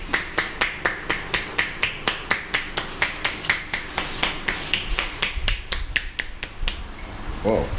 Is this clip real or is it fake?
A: real